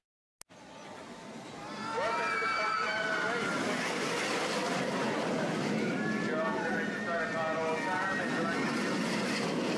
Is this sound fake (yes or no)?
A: no